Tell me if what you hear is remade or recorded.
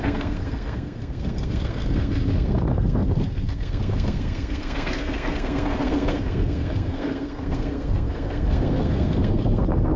remade